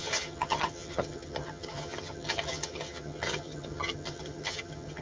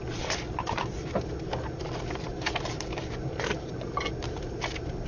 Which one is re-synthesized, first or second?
first